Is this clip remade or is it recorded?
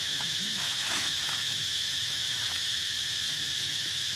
remade